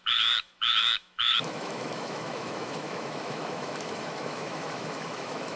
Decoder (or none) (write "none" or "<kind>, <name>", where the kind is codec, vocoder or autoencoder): autoencoder, DAC-VAE